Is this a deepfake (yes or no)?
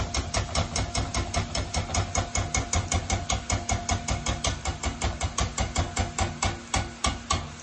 no